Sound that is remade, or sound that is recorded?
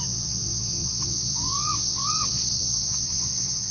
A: remade